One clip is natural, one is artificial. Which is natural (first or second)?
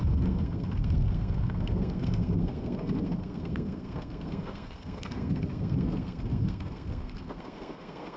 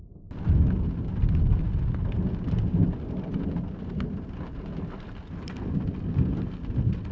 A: second